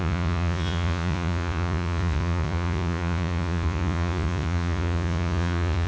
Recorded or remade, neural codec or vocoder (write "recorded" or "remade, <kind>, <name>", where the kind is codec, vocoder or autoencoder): remade, vocoder, Vocos